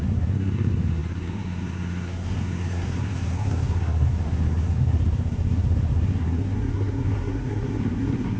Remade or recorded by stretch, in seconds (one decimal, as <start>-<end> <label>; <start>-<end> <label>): 0.0-8.4 remade